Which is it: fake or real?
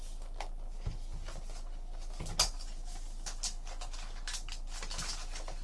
real